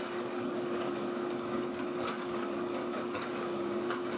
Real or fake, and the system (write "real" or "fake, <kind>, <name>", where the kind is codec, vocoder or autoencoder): fake, codec, DAC